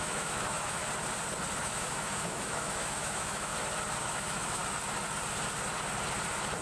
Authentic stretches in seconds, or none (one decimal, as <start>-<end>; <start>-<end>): 0.8-1.6; 3.5-4.0; 4.6-6.6